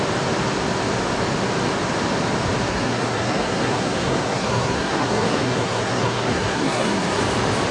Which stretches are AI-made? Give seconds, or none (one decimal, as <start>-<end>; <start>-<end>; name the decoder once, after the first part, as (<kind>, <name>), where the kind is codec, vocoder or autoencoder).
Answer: 2.7-7.2 (codec, SNAC)